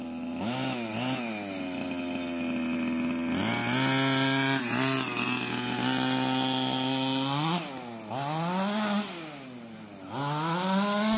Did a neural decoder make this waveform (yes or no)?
no